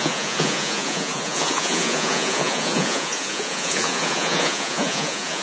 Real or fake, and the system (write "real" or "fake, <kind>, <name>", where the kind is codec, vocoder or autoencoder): fake, vocoder, Vocos